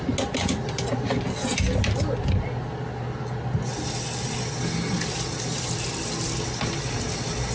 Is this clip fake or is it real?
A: real